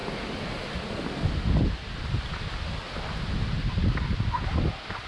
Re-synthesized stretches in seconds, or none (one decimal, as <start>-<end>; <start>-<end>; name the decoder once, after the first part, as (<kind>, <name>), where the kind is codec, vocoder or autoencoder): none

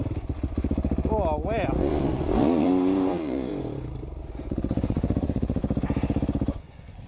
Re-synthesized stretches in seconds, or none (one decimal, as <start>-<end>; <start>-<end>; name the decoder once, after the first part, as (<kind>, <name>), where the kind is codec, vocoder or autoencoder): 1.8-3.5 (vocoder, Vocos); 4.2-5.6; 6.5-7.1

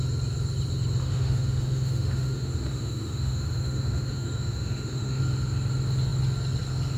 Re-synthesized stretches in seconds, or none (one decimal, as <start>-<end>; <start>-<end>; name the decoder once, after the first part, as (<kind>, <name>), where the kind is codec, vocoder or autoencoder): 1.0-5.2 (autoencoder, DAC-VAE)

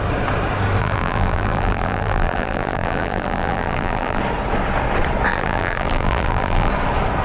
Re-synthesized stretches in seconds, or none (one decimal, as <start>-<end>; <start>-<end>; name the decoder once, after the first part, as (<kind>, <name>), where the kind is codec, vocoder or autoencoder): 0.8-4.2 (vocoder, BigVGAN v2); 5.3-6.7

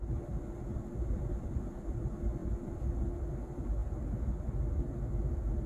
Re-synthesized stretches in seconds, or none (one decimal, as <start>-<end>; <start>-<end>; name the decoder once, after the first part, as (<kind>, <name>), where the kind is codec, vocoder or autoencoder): none